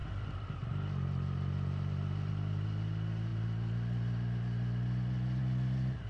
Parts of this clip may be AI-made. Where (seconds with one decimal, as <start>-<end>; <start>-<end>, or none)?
0.0-2.3